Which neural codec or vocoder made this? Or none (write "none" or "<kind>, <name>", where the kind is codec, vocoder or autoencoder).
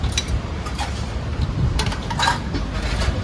vocoder, BigVGAN v2